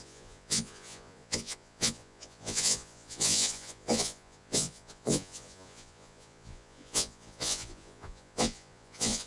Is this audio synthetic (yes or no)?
yes